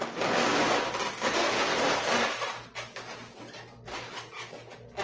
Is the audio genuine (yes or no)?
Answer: yes